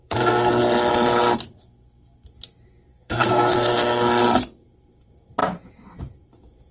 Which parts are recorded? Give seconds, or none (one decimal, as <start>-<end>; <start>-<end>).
0.5-2.9; 4.2-6.7